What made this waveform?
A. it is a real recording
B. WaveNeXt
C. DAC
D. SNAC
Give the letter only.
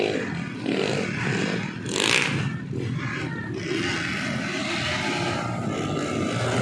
A